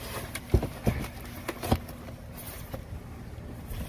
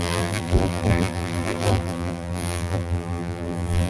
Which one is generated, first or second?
second